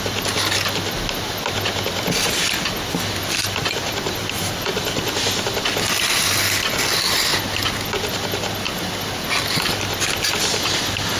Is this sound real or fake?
real